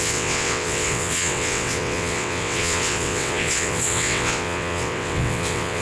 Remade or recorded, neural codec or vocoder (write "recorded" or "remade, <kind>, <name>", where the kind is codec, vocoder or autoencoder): remade, vocoder, WaveNeXt